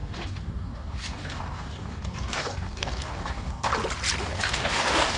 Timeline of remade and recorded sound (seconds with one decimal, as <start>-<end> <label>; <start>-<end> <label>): 0.0-3.7 remade; 3.7-4.2 recorded; 4.2-5.2 remade